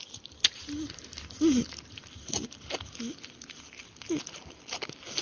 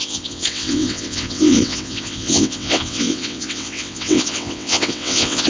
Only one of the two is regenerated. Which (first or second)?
second